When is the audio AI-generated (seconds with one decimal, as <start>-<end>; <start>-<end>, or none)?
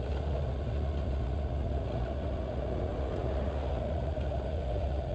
0.0-5.1